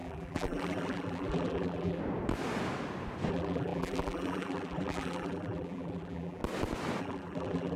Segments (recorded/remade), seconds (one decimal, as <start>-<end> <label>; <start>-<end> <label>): 0.0-2.0 remade; 2.0-3.3 recorded; 3.3-6.4 remade; 6.4-7.0 recorded; 7.0-7.8 remade